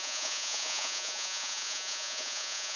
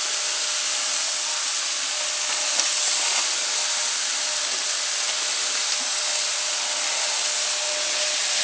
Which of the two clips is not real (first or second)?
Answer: first